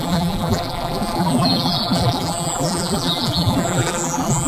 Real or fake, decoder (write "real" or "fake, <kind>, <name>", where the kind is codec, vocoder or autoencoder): fake, vocoder, BigVGAN v2